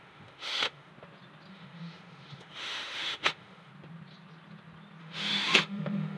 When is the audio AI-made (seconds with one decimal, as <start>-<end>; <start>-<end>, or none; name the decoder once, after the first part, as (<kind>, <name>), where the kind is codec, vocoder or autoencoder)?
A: 0.0-0.9 (autoencoder, DAC-VAE); 1.5-3.7; 5.0-6.2